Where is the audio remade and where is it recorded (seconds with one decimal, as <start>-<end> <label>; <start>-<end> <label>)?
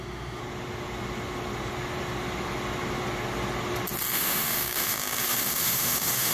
0.0-0.4 remade; 0.4-4.1 recorded; 4.1-6.3 remade